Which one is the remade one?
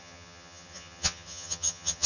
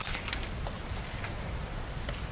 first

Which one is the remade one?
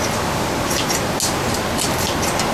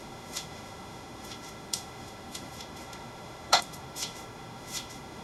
second